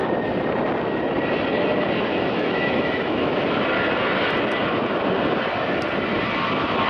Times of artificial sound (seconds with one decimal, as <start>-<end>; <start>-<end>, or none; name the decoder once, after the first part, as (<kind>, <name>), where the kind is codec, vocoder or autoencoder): 2.1-3.6 (autoencoder, DAC-VAE)